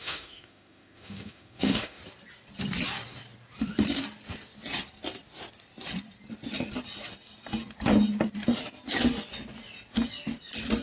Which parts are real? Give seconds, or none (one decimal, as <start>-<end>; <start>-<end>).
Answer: 2.0-10.8